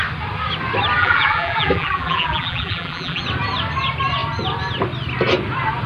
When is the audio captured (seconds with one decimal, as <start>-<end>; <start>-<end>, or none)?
0.0-1.0; 3.2-5.9